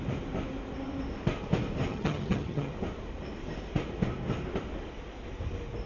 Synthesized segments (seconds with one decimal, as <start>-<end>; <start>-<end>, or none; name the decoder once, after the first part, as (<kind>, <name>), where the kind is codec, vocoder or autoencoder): 1.9-2.7 (vocoder, HiFi-GAN)